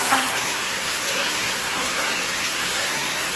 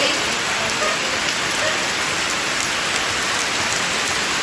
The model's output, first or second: first